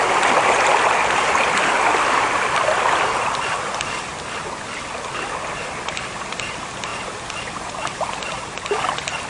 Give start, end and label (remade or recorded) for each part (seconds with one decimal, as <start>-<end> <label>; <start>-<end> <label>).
0.0-6.9 recorded; 6.9-8.9 remade; 8.9-9.3 recorded